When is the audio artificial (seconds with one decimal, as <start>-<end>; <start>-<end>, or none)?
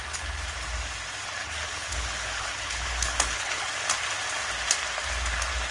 1.4-3.7